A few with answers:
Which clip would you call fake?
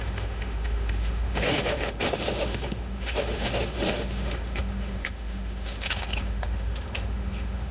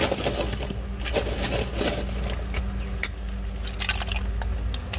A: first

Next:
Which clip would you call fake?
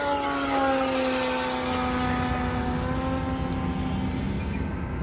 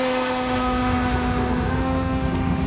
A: second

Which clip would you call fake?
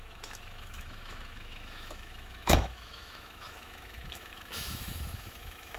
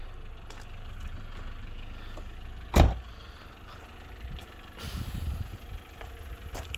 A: first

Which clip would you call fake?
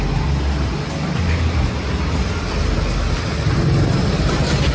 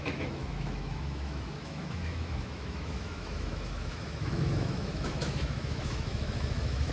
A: second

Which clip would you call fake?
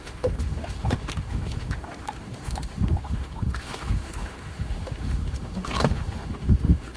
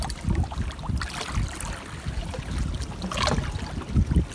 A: first